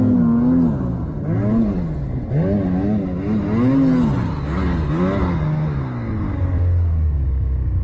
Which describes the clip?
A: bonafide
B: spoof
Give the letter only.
A